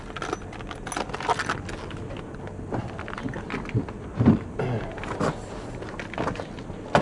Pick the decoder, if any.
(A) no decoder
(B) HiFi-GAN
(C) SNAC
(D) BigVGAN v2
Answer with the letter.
A